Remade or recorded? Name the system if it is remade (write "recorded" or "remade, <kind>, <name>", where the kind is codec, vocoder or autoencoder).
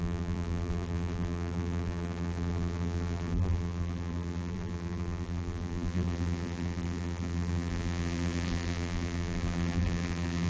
remade, vocoder, BigVGAN v2